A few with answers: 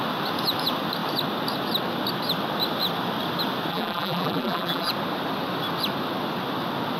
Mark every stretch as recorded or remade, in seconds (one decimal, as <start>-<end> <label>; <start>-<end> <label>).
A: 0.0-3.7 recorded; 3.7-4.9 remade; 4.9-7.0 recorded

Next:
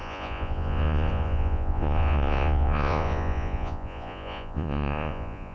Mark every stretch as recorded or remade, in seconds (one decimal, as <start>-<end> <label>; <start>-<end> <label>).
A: 0.0-5.5 remade

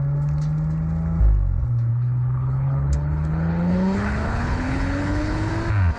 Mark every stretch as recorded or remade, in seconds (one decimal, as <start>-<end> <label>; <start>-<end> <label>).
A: 0.0-1.9 recorded; 1.9-5.5 remade; 5.5-6.0 recorded